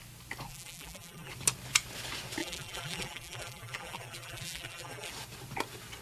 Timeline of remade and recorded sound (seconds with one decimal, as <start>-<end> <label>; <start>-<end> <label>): 0.0-0.5 recorded; 0.5-1.3 remade; 1.3-2.4 recorded; 2.4-5.1 remade; 5.1-6.0 recorded